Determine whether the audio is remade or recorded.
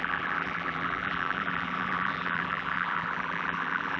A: remade